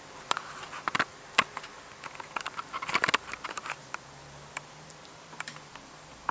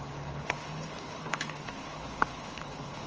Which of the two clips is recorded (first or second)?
first